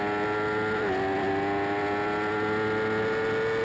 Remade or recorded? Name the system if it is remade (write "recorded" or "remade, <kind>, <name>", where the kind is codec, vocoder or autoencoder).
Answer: recorded